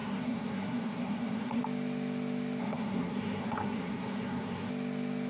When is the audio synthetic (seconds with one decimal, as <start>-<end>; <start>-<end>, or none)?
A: 0.0-1.6; 2.6-4.7